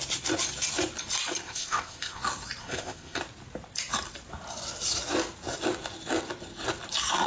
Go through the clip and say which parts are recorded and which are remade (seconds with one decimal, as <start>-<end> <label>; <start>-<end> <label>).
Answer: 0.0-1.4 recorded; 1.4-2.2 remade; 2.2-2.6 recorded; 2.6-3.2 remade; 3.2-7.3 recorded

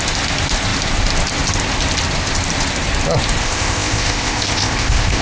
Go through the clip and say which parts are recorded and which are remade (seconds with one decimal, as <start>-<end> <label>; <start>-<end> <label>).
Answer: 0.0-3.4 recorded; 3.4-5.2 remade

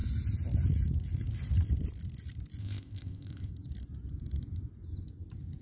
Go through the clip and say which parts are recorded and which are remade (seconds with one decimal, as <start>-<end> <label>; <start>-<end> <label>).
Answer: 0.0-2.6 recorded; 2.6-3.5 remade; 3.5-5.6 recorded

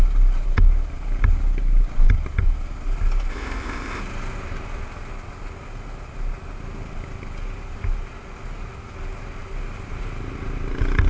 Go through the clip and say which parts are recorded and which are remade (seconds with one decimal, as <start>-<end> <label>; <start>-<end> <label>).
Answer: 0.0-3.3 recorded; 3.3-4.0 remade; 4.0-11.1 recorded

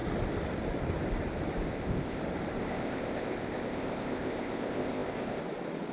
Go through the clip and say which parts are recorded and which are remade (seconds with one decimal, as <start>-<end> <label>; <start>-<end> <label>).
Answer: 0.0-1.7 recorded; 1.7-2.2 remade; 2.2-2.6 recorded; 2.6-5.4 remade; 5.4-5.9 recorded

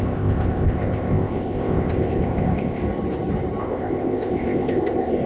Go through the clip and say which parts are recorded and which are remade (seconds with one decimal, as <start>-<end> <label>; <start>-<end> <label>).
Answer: 0.0-2.8 remade; 2.8-3.6 recorded; 3.6-5.3 remade

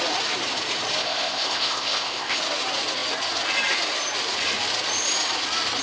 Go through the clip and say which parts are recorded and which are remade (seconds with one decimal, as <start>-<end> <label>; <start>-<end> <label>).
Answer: 0.0-1.0 recorded; 1.0-2.4 remade; 2.4-5.8 recorded

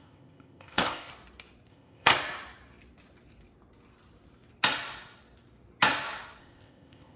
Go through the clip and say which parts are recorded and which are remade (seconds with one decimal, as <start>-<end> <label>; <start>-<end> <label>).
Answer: 0.0-1.1 remade; 1.1-1.7 recorded; 1.7-2.1 remade; 2.1-6.4 recorded; 6.4-7.2 remade